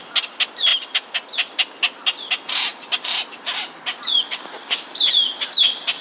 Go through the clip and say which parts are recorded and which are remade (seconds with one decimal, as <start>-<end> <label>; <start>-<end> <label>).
0.0-2.7 recorded; 2.7-5.1 remade; 5.1-6.0 recorded